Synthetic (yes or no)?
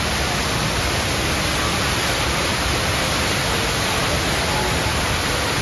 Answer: no